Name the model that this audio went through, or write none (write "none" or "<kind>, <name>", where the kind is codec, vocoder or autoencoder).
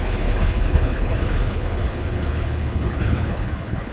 codec, HILCodec